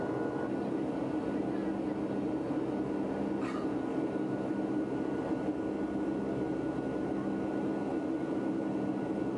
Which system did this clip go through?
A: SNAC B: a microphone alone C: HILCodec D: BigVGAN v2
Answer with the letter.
B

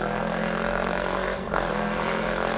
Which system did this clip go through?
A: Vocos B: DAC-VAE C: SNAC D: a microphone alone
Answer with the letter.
C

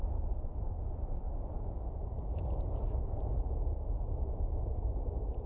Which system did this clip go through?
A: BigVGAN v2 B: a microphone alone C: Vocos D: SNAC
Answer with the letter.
B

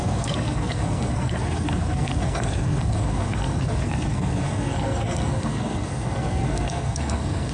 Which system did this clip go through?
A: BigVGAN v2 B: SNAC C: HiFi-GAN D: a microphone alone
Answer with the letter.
B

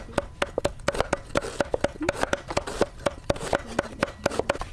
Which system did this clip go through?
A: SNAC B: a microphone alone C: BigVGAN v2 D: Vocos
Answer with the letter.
B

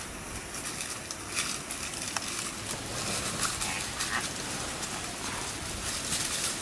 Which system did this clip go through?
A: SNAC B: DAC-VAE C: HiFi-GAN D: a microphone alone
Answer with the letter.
D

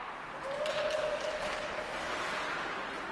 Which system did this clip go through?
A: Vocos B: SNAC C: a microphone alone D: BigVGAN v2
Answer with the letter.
C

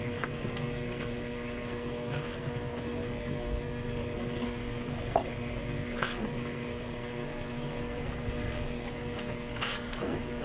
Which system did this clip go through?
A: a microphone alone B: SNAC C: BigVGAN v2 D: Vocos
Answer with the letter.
B